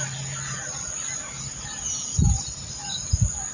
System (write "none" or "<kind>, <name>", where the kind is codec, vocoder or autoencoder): none